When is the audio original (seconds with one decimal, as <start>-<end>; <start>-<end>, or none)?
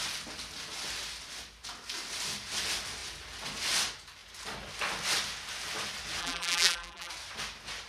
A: 0.0-6.2; 7.1-7.9